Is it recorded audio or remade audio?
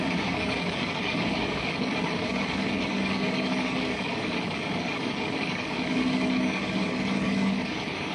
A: remade